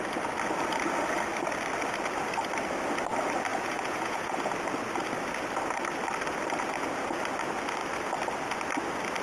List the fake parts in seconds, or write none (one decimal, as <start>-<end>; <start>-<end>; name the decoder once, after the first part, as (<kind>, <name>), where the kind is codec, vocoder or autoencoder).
3.5-4.4 (vocoder, Vocos)